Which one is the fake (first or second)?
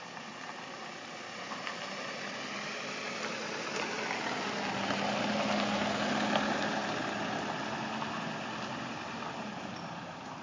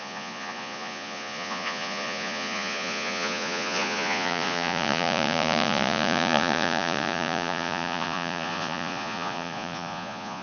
second